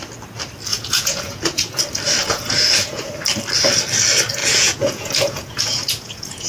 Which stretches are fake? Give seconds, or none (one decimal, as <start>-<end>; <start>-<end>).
0.7-1.8; 2.2-3.1; 4.4-6.5